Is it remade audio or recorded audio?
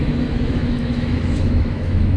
remade